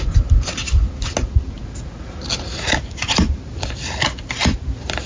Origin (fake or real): real